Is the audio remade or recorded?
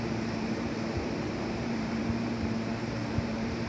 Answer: remade